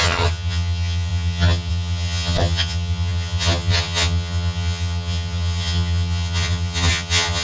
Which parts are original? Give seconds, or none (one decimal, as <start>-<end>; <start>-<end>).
none